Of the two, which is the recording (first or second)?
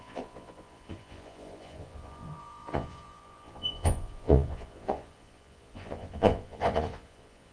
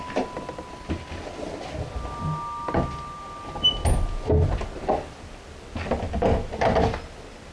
second